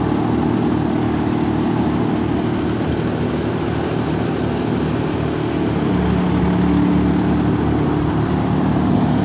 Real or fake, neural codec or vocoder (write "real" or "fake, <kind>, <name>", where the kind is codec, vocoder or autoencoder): real